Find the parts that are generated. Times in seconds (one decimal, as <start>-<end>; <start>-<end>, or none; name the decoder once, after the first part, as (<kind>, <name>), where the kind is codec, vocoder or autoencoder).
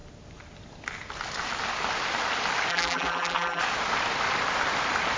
2.7-3.6 (vocoder, BigVGAN v2)